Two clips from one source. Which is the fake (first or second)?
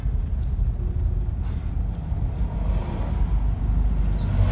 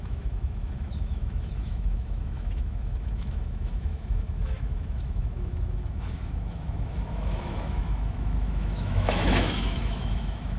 second